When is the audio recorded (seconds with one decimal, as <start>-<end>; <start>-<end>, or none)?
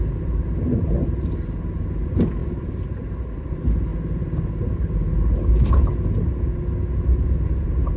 0.0-8.0